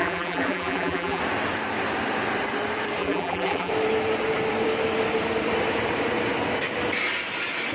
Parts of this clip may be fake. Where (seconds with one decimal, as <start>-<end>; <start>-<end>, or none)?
0.0-1.2; 3.0-3.7